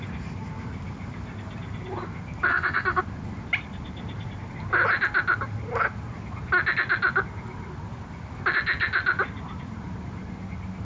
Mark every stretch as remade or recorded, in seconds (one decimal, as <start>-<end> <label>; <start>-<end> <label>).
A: 0.0-2.5 recorded; 2.5-3.0 remade; 3.0-10.8 recorded